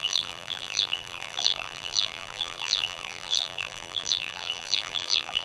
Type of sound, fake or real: fake